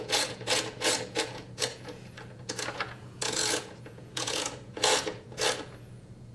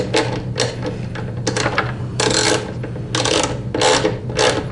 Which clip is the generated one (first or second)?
first